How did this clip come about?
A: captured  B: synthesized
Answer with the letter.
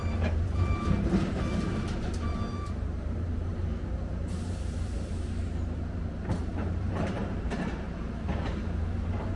B